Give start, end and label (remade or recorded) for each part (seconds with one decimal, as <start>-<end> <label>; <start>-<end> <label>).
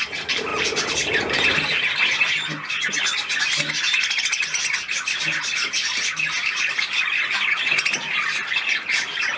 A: 0.0-9.4 recorded